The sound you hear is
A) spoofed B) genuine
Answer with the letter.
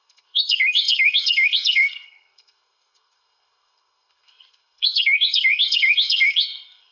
A